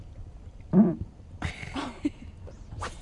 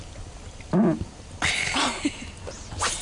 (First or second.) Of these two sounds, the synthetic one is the first